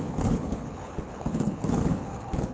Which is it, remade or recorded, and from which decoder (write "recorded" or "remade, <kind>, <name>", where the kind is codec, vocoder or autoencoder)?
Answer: remade, codec, HILCodec